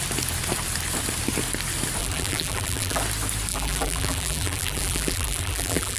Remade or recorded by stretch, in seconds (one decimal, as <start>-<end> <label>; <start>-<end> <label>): 0.0-2.0 recorded; 2.0-3.0 remade; 3.0-3.5 recorded; 3.5-6.0 remade